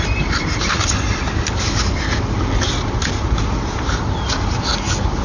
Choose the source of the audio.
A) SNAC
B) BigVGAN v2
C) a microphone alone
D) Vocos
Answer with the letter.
C